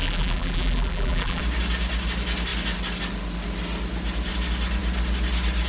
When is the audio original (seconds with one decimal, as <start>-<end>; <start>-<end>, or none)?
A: 1.4-5.7